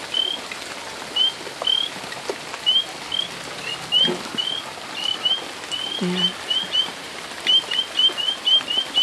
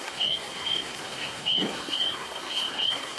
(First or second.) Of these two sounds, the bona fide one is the first